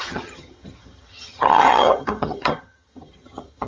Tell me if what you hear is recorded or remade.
remade